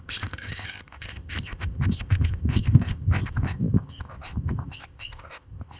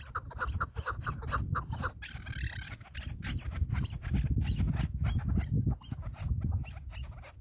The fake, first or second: first